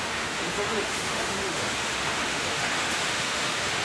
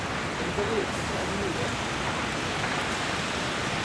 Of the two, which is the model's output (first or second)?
first